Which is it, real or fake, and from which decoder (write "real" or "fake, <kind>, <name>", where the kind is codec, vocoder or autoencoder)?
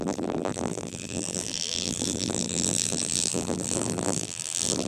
fake, vocoder, BigVGAN v2